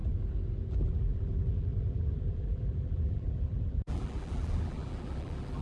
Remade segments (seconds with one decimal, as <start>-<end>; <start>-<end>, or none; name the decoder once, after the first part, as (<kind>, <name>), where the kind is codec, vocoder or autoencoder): 0.7-5.6 (vocoder, BigVGAN v2)

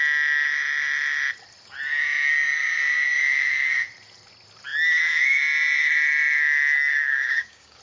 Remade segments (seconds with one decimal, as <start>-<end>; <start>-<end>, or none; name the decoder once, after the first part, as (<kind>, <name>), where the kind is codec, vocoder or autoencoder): 2.3-3.9 (codec, DAC); 6.9-7.8

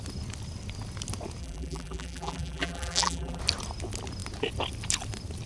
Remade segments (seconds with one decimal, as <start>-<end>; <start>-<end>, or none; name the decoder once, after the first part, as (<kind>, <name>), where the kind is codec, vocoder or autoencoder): 1.4-3.4 (vocoder, BigVGAN v2)